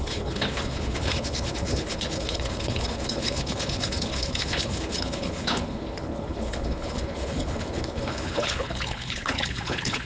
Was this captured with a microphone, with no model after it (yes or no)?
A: no